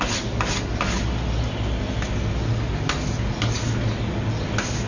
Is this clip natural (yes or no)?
yes